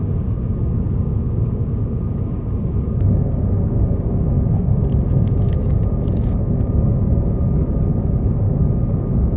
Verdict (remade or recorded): remade